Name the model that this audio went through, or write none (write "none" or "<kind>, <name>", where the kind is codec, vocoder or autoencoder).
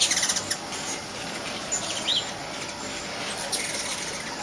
none